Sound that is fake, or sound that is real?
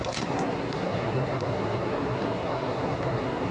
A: fake